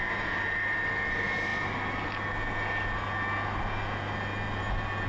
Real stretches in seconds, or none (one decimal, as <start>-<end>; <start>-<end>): 0.0-5.1